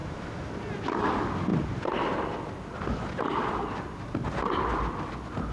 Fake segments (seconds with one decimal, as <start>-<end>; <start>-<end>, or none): 0.0-0.5